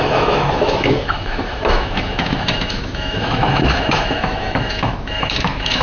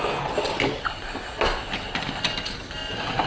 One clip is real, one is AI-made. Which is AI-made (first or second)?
first